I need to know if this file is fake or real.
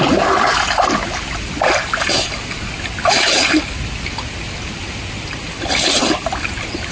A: real